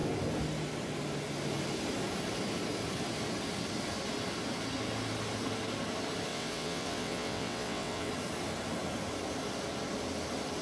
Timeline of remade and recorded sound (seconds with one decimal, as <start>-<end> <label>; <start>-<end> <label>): 0.0-6.3 recorded; 6.3-8.1 remade; 8.1-10.6 recorded